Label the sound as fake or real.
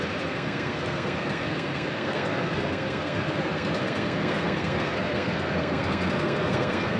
fake